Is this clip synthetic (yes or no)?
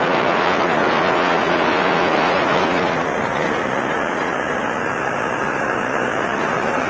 yes